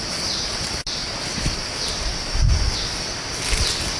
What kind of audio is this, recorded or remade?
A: recorded